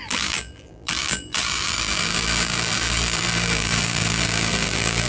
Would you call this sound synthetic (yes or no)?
yes